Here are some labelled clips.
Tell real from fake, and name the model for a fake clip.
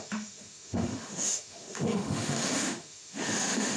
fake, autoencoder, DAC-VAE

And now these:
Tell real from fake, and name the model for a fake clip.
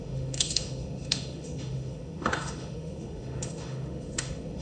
fake, autoencoder, DAC-VAE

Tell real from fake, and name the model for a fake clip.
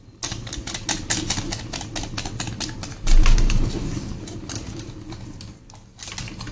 real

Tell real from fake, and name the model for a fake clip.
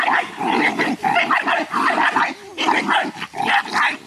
real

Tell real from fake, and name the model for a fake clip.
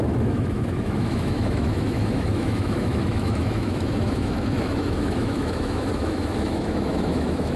fake, autoencoder, DAC-VAE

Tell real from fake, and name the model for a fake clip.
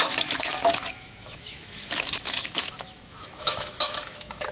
fake, autoencoder, DAC-VAE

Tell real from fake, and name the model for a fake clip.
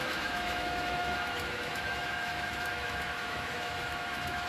fake, autoencoder, DAC-VAE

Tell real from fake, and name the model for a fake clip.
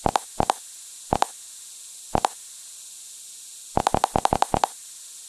real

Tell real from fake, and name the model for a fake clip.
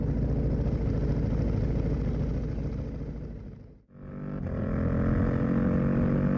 real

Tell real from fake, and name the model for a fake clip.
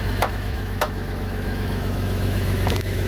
fake, autoencoder, DAC-VAE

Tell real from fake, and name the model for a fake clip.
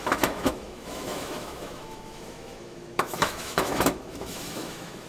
fake, autoencoder, DAC-VAE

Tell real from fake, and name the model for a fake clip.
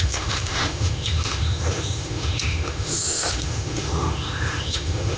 fake, autoencoder, DAC-VAE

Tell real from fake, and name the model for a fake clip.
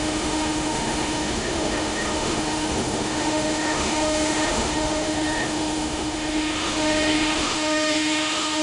fake, autoencoder, DAC-VAE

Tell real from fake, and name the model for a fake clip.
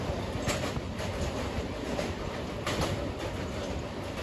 real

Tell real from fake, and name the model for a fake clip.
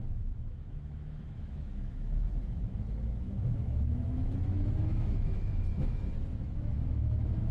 fake, autoencoder, DAC-VAE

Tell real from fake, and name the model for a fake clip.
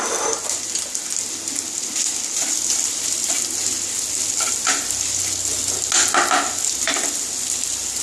real